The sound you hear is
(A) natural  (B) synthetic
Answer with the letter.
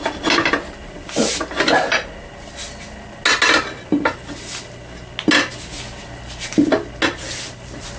A